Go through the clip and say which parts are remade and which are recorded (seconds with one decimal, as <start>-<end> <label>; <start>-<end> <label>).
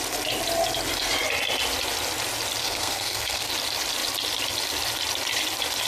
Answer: 0.0-2.6 recorded; 2.6-3.5 remade; 3.5-5.9 recorded